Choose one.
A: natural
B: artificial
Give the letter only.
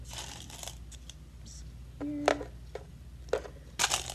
A